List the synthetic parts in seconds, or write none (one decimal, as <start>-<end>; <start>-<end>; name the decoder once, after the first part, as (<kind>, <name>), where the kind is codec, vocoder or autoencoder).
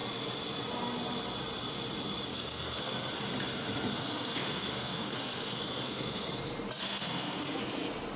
2.3-3.1 (codec, SNAC); 3.9-6.3; 6.8-7.6